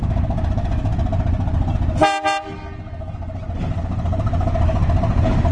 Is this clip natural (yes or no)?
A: yes